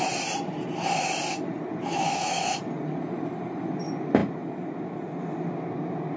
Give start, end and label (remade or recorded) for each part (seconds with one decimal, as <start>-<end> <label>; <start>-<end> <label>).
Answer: 0.0-1.8 recorded; 1.8-2.6 remade; 2.6-6.2 recorded